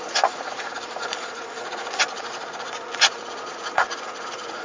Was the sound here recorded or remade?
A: remade